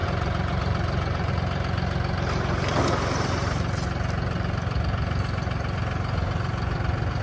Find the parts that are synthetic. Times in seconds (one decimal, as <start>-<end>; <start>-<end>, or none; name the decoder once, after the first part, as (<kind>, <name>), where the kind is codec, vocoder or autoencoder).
0.0-1.3 (vocoder, BigVGAN v2)